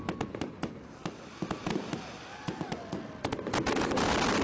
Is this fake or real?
real